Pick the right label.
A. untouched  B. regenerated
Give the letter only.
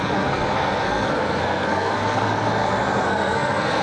B